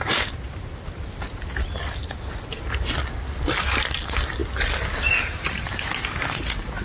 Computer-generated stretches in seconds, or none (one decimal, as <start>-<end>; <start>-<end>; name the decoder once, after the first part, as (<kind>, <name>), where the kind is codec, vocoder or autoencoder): none